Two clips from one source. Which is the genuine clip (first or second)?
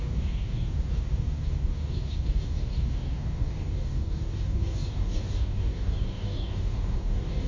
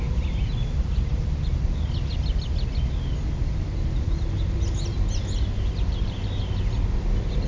second